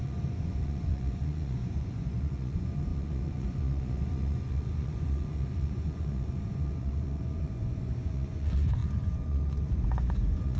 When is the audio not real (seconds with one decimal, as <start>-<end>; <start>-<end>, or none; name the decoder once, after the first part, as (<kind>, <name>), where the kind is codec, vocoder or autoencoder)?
0.0-10.6 (vocoder, Vocos)